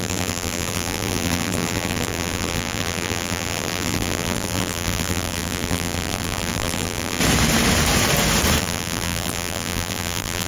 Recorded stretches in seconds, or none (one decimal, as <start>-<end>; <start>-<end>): 7.2-8.6